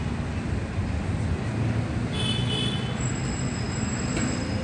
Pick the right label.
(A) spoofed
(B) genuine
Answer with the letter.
B